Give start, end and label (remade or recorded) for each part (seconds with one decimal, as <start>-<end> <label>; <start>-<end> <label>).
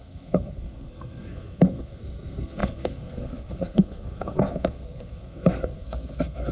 0.0-6.5 remade